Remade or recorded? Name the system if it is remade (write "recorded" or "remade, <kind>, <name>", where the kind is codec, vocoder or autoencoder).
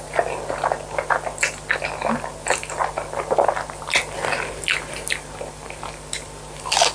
recorded